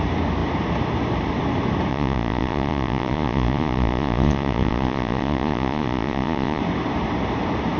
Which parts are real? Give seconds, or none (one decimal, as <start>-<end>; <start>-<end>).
0.0-1.9; 6.6-7.8